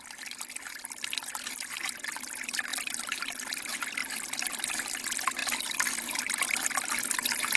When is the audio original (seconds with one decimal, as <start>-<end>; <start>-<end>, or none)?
0.0-2.7; 3.6-4.0; 4.6-5.4; 5.9-7.6